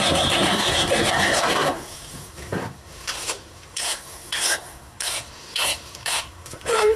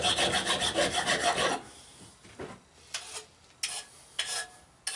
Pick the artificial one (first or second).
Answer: first